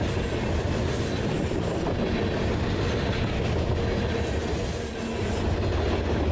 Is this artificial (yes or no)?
no